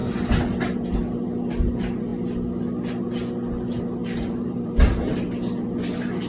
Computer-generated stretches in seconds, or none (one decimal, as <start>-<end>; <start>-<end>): 4.0-5.1